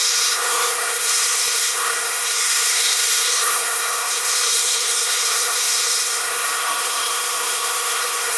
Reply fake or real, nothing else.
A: fake